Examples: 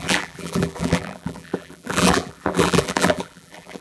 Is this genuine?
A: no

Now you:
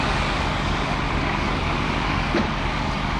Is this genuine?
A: no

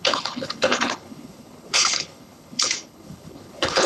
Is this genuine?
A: no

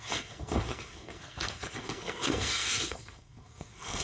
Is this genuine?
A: no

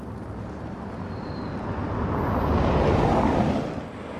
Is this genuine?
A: yes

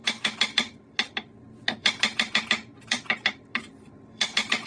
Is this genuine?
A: no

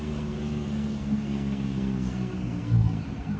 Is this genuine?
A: no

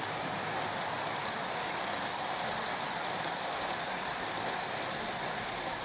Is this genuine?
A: yes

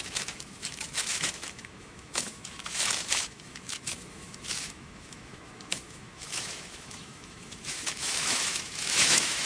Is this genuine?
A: no